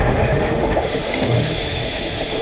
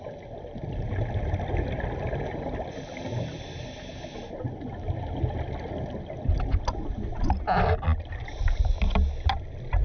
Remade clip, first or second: first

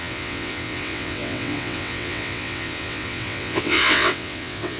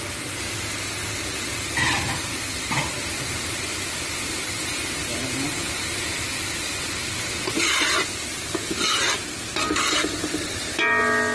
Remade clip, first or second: first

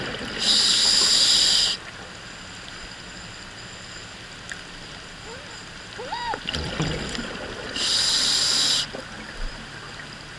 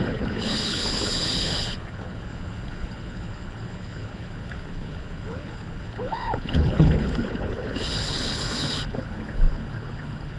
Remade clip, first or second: second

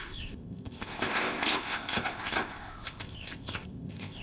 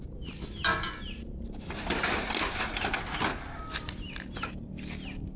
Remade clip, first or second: first